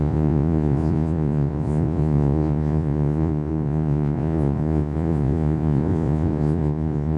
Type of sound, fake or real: fake